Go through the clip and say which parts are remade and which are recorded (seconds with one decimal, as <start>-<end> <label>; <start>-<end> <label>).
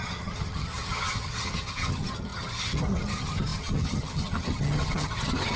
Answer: 0.0-5.6 remade